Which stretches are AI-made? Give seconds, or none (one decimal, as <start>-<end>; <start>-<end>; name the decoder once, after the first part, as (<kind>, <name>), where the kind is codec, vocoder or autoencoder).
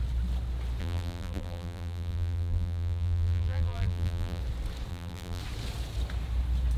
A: 0.8-4.4 (vocoder, BigVGAN v2); 4.9-5.4